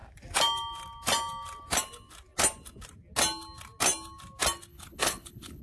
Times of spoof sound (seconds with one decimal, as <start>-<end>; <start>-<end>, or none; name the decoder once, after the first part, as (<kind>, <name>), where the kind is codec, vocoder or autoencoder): 4.7-5.6 (codec, HILCodec)